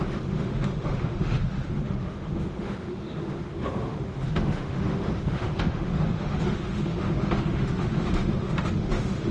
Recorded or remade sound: remade